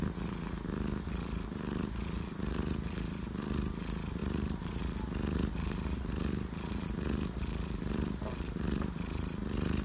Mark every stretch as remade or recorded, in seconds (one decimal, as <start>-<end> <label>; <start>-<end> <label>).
0.0-4.2 recorded; 4.2-4.8 remade; 4.8-9.8 recorded